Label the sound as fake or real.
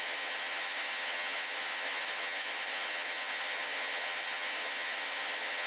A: fake